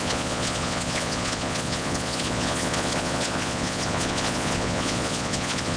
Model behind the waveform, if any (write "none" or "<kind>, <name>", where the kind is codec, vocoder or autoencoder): vocoder, Vocos